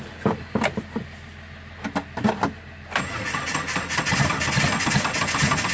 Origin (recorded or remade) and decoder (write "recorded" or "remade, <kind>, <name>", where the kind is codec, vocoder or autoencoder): recorded